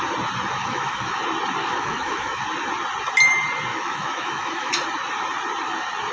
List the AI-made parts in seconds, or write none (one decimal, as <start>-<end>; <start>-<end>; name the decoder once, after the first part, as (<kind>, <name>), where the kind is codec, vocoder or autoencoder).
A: 0.6-1.2 (autoencoder, DAC-VAE); 1.6-2.4; 3.7-4.7